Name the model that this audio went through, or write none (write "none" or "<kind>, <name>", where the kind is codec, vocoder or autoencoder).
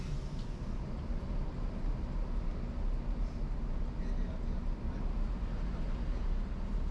none